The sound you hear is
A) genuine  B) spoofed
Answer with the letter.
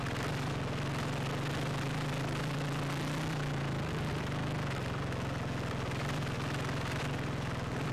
A